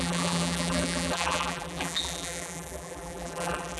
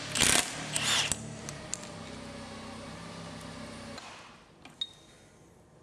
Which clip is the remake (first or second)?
first